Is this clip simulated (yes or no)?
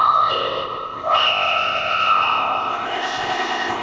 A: yes